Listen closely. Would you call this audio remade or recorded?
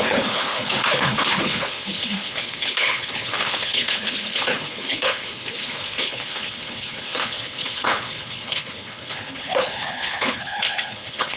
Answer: remade